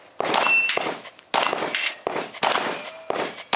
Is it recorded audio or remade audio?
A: recorded